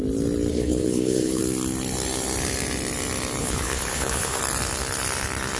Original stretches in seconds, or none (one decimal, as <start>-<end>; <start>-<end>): 0.0-0.5; 1.4-3.4; 4.4-5.6